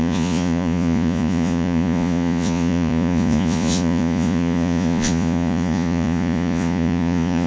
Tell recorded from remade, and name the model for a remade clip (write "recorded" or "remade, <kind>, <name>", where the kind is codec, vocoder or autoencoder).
remade, vocoder, Vocos